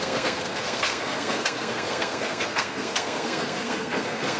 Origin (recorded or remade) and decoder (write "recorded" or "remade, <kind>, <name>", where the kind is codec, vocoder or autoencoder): remade, codec, SNAC